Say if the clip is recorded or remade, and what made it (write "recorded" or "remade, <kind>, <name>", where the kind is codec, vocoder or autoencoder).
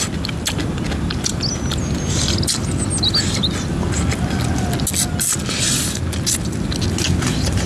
recorded